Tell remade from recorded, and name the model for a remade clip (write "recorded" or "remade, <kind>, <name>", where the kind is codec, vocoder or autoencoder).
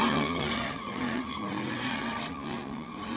remade, vocoder, WaveNeXt